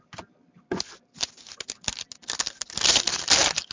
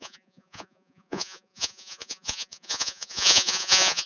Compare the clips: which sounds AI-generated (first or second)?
second